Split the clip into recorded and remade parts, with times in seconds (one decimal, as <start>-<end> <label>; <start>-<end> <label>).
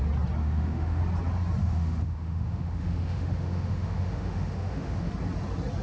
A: 0.0-0.4 recorded; 0.4-1.0 remade; 1.0-1.6 recorded; 1.6-5.1 remade; 5.1-5.8 recorded